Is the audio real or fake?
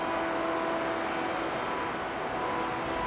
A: real